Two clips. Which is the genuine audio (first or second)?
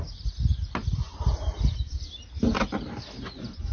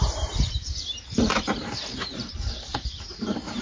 first